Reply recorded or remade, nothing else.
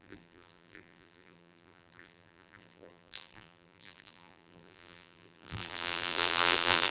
remade